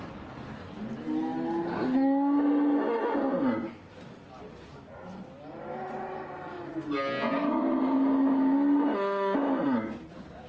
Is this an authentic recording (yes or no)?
yes